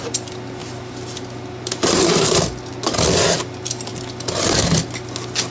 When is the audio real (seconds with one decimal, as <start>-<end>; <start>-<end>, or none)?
0.0-5.5